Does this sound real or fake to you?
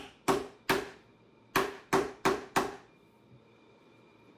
real